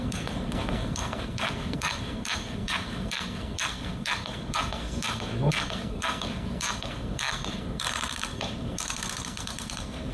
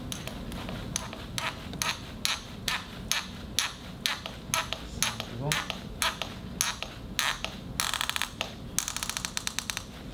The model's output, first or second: first